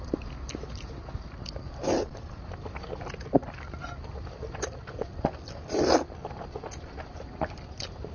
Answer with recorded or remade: recorded